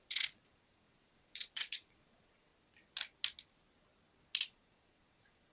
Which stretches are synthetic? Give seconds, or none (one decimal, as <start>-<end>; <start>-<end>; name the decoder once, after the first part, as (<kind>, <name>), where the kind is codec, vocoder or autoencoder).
0.0-2.5 (vocoder, Vocos); 4.4-5.5